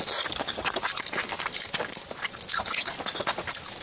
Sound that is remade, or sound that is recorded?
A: recorded